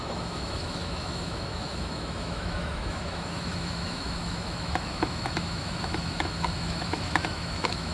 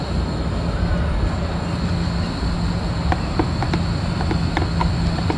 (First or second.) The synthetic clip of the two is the first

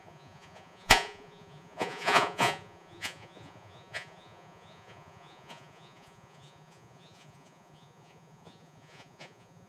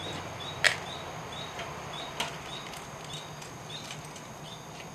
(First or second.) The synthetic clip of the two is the first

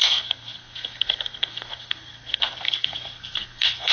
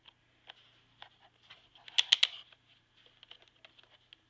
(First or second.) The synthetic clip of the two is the first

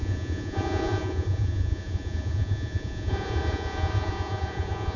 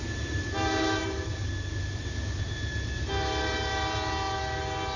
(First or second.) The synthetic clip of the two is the first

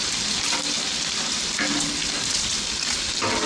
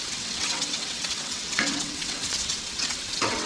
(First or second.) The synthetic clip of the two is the second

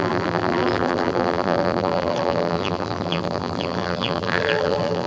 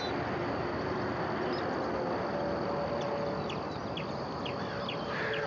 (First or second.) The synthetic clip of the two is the first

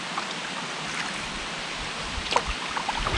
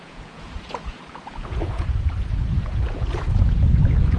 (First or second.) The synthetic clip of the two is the second